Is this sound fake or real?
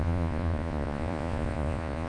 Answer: fake